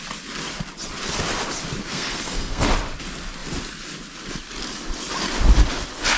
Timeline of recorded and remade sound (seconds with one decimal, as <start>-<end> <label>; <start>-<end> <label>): 0.0-1.8 recorded; 1.8-2.6 remade; 2.6-6.2 recorded